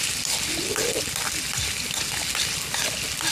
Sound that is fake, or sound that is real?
real